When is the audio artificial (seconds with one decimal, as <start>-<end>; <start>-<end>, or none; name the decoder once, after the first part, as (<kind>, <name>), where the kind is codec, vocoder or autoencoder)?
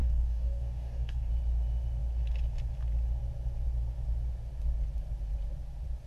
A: 0.0-1.3 (codec, DAC)